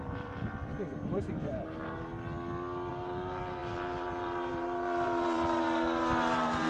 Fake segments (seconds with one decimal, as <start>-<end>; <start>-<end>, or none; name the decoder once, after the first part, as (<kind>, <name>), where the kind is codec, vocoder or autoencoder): 0.0-2.1 (vocoder, BigVGAN v2); 2.9-6.7